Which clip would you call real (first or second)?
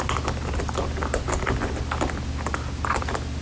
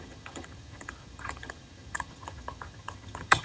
first